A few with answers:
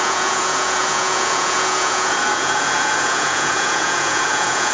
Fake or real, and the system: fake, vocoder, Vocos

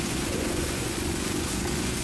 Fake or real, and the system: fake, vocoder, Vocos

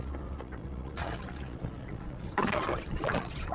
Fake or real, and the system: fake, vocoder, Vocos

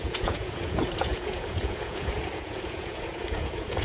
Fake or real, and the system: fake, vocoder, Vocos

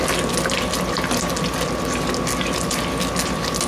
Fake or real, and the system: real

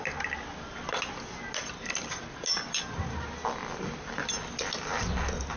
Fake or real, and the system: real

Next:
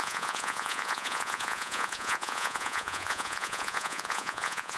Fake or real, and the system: fake, vocoder, Vocos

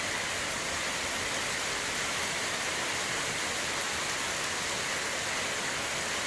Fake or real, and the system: real